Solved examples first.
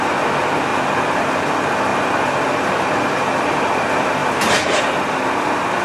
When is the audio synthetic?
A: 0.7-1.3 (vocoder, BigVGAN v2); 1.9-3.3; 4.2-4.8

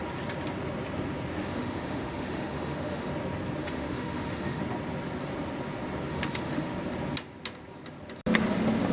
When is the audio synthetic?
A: 1.5-3.1 (autoencoder, DAC-VAE); 3.6-4.6; 6.1-6.7